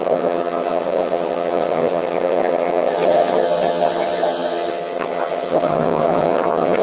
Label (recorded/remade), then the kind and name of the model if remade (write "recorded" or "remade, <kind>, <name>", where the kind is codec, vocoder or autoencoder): remade, vocoder, HiFi-GAN